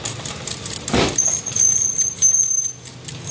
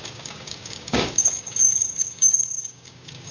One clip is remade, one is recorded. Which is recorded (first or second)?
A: first